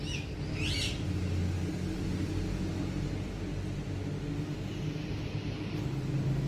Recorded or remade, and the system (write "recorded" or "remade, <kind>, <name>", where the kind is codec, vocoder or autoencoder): recorded